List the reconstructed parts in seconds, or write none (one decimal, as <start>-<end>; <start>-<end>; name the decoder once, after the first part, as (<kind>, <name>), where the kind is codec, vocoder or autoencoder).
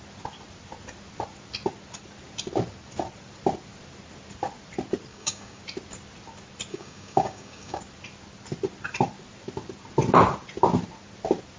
5.1-5.6 (codec, DAC); 6.7-7.8